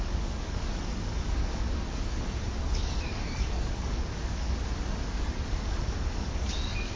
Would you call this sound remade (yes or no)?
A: yes